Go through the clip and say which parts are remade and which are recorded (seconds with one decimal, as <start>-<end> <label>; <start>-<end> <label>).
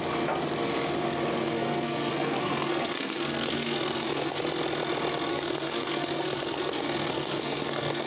0.0-1.4 recorded; 1.4-4.4 remade; 4.4-5.3 recorded; 5.3-8.1 remade